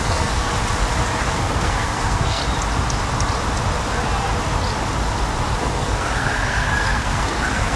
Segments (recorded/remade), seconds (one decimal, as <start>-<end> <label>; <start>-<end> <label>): 0.0-0.5 remade; 0.5-1.3 recorded; 1.3-2.4 remade; 2.4-5.6 recorded; 5.6-7.8 remade

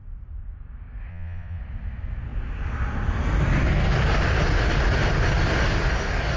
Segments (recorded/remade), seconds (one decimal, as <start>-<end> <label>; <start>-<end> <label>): 0.0-1.1 recorded; 1.1-1.6 remade; 1.6-6.4 recorded

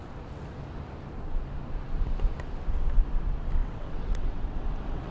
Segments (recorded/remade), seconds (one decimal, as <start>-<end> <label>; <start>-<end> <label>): 0.0-3.6 recorded; 3.6-5.1 remade

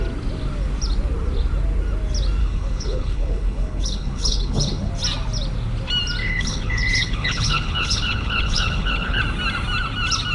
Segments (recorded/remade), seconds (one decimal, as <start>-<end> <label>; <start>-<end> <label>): 0.0-2.4 recorded; 2.4-4.9 remade; 4.9-6.2 recorded; 6.2-9.2 remade; 9.2-10.3 recorded

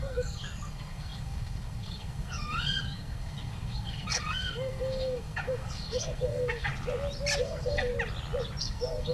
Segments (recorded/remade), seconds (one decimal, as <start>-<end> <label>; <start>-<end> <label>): 0.0-6.7 remade; 6.7-7.4 recorded; 7.4-7.9 remade; 7.9-8.6 recorded; 8.6-9.1 remade

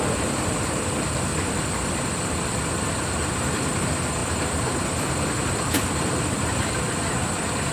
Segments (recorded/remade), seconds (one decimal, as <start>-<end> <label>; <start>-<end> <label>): 0.0-7.7 remade

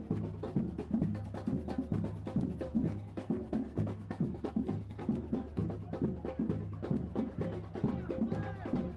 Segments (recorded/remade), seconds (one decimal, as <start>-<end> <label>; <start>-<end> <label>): 0.0-2.7 recorded; 2.7-5.0 remade; 5.0-9.0 recorded